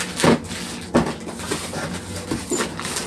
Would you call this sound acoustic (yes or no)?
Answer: yes